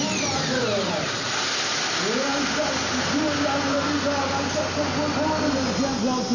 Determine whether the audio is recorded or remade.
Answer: recorded